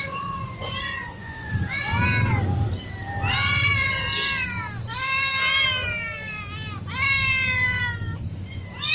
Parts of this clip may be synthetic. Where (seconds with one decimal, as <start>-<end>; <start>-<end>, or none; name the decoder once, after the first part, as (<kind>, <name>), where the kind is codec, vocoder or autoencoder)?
0.0-1.9 (vocoder, Vocos); 3.3-3.7; 8.5-8.9